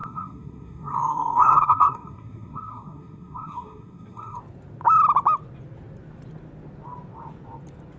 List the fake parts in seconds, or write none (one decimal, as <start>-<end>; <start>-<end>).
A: 0.0-4.4